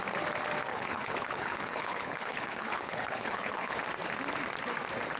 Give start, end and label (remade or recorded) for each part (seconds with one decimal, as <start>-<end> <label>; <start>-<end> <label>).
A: 0.0-0.7 recorded; 0.7-3.8 remade; 3.8-5.2 recorded